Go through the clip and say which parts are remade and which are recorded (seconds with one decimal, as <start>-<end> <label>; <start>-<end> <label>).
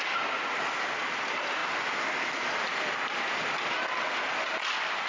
0.0-5.1 recorded